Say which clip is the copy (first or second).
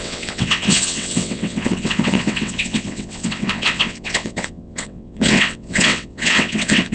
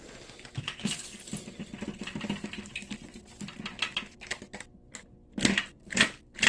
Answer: first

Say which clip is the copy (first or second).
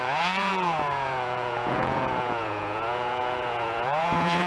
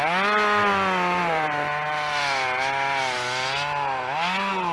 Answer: first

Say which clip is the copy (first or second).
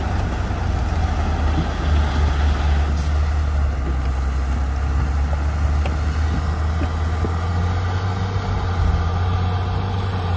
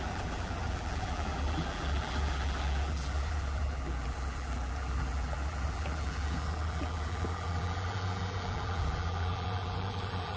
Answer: second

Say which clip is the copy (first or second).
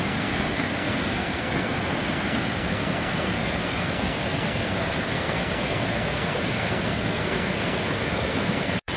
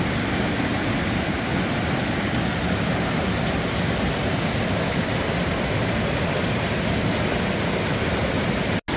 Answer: first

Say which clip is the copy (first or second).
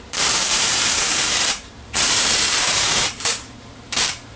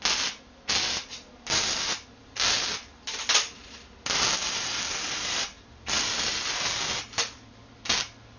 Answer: first